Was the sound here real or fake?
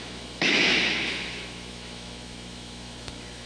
fake